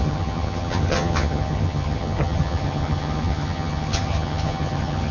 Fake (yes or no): yes